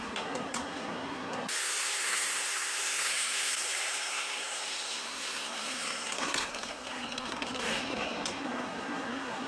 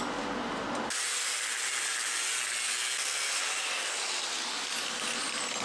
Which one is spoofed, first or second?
first